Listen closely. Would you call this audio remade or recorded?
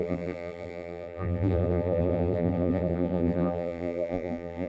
remade